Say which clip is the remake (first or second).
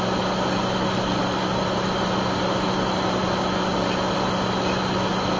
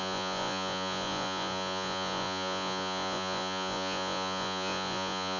second